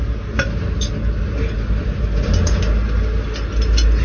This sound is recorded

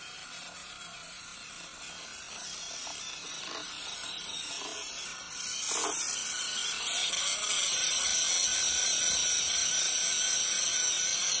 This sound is recorded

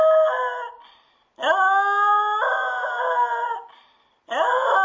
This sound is recorded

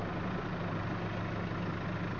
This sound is recorded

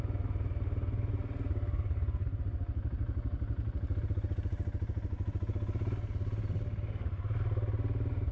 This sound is recorded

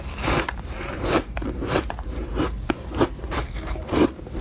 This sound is remade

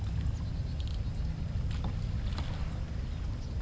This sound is recorded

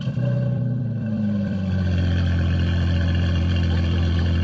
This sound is remade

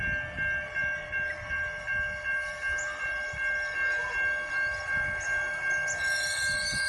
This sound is recorded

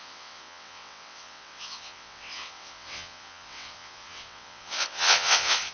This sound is remade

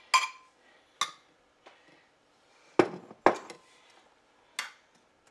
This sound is recorded